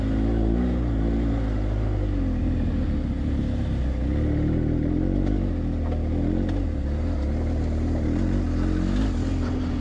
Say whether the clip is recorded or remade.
recorded